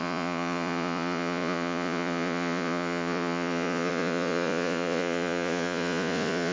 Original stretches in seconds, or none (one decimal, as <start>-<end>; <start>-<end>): none